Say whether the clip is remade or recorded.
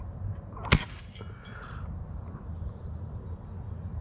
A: recorded